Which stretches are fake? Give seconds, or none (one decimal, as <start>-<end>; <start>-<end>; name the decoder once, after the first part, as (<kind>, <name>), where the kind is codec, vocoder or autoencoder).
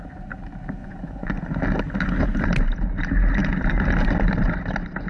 0.8-1.4 (vocoder, Vocos)